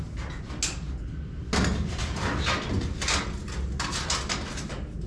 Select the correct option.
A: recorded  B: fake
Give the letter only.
A